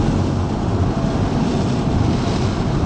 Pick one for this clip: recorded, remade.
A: recorded